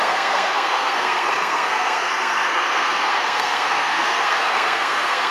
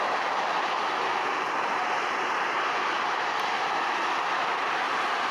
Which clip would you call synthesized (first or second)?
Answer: first